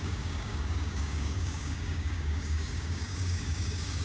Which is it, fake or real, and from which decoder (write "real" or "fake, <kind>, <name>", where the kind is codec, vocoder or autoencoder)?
fake, codec, DAC